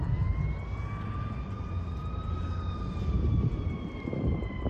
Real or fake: real